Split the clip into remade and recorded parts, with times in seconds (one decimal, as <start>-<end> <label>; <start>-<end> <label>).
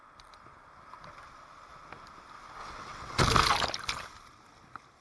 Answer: 0.0-2.6 recorded; 2.6-3.2 remade; 3.2-5.0 recorded